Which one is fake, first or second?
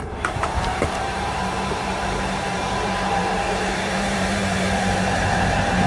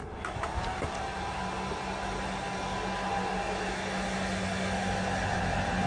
first